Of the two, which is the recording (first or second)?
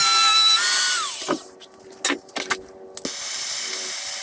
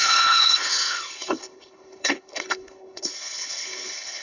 first